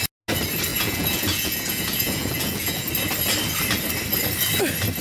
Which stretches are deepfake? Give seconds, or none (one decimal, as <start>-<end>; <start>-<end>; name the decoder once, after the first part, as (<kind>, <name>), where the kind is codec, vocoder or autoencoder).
0.7-2.9 (vocoder, Vocos)

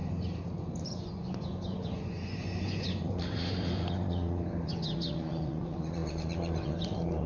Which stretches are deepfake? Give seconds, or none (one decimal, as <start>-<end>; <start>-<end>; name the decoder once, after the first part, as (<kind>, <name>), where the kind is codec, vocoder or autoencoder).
1.0-7.3 (vocoder, Vocos)